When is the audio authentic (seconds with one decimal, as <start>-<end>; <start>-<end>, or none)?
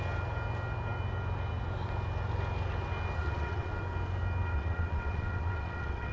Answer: 0.0-3.2; 3.8-4.5